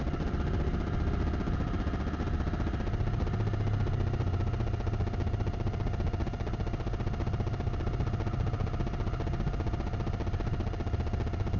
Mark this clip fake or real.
real